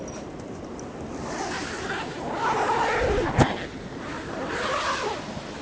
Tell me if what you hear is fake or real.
real